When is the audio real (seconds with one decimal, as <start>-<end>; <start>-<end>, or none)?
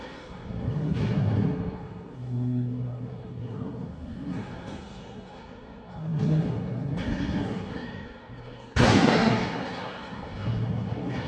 none